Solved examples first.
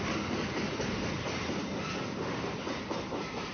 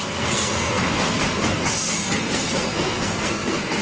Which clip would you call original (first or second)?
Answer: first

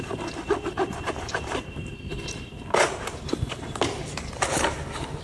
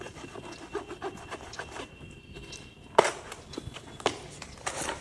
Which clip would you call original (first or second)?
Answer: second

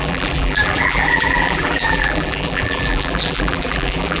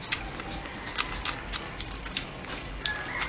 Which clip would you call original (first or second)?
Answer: second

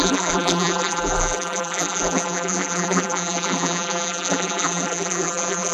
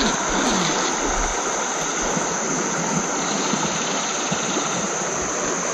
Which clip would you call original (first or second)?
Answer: second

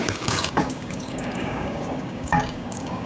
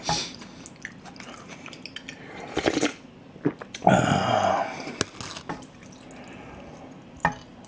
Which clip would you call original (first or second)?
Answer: second